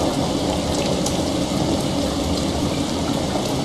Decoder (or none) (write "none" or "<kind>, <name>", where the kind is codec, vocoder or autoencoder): none